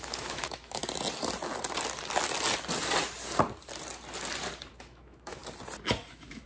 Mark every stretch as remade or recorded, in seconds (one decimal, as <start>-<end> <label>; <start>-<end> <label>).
0.0-0.8 remade; 0.8-4.7 recorded; 4.7-5.4 remade; 5.4-6.1 recorded; 6.1-6.5 remade